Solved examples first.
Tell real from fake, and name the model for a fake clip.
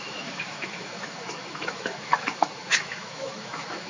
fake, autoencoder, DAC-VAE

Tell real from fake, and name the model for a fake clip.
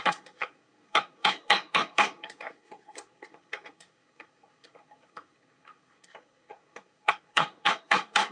fake, codec, SNAC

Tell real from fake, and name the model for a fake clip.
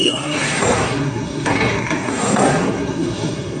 fake, codec, SNAC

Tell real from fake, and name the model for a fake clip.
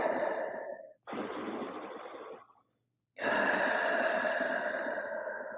real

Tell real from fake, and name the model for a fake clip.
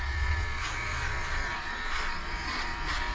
fake, vocoder, Vocos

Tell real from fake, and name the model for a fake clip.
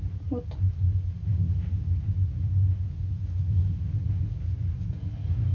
real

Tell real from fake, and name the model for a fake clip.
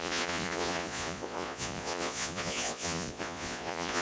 fake, vocoder, Vocos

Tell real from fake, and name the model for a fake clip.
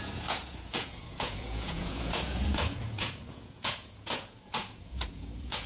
fake, vocoder, Vocos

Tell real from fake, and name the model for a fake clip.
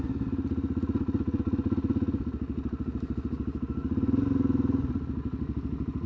real